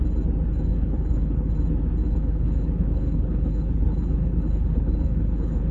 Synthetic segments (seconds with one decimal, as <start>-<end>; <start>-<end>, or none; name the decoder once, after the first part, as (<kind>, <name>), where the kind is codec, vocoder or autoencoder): 0.7-1.5 (codec, HILCodec); 2.0-5.7